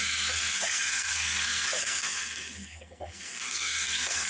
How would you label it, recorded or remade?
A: remade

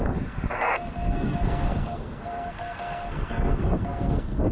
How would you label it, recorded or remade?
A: remade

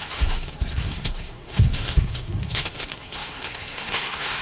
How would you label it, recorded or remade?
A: remade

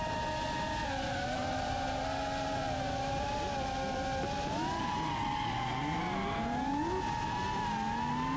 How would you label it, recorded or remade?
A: recorded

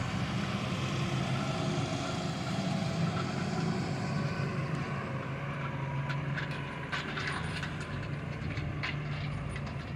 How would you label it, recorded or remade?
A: recorded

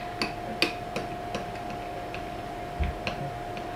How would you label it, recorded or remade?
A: recorded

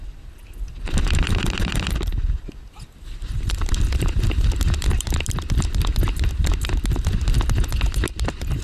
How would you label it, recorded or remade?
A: recorded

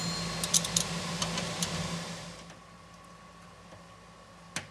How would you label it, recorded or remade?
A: recorded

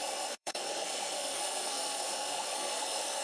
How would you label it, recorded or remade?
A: remade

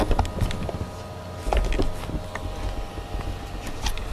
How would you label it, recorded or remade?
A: recorded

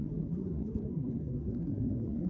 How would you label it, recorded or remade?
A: remade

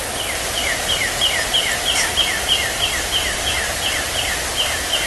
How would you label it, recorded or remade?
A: recorded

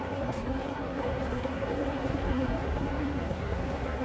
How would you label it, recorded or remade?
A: remade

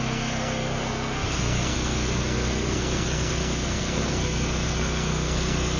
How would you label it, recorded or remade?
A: remade